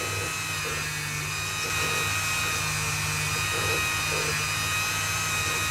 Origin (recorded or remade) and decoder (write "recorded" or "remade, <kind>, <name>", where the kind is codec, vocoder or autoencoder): recorded